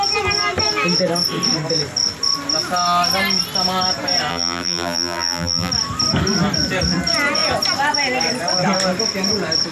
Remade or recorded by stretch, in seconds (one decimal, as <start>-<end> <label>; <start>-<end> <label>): 0.0-4.3 recorded; 4.3-5.7 remade; 5.7-9.7 recorded